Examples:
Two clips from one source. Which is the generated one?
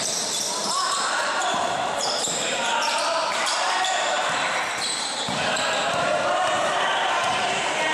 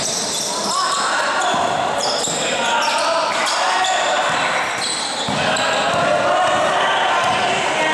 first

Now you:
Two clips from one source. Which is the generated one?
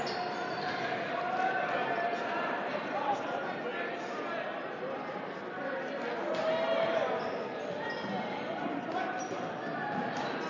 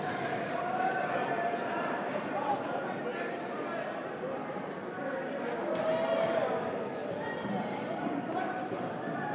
second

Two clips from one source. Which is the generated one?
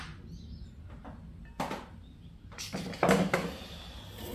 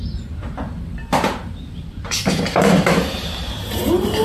second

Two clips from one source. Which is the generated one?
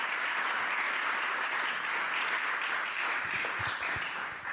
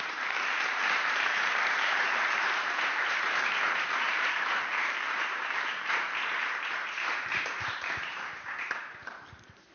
second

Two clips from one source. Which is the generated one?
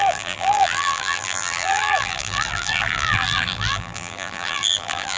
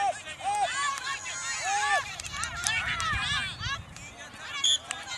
first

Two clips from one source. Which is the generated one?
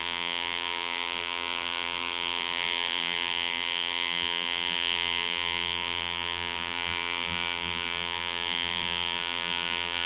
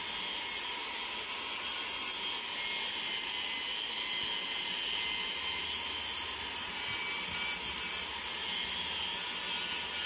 first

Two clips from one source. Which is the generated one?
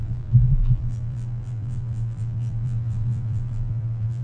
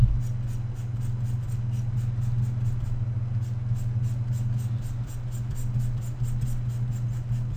first